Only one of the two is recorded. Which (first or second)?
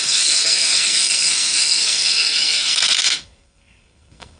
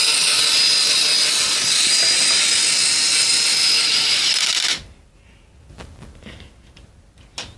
second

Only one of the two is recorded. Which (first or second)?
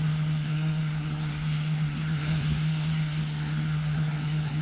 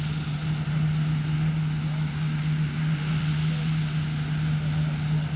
second